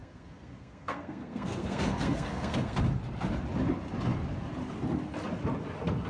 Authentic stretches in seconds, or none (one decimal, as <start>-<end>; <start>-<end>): 2.8-6.1

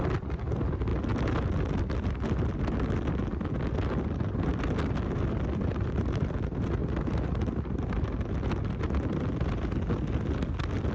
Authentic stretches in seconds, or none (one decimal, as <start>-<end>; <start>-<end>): 0.0-10.9

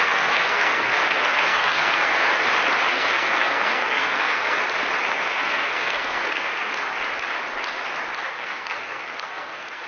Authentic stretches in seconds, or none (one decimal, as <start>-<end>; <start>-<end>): 2.3-2.9; 4.6-5.1; 6.7-8.2